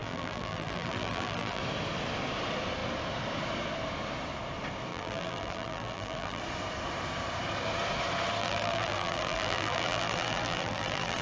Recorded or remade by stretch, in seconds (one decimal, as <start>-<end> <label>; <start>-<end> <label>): 0.0-1.6 remade; 1.6-4.9 recorded; 4.9-6.4 remade; 6.4-8.4 recorded; 8.4-11.2 remade